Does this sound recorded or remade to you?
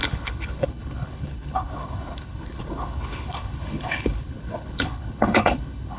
remade